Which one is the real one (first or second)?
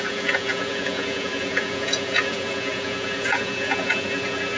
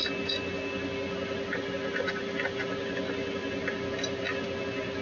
second